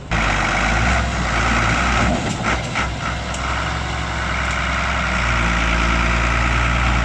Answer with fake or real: real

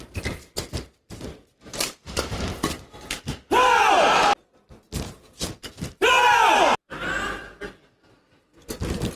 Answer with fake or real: real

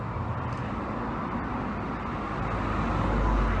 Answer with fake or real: real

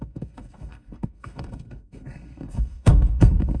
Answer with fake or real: fake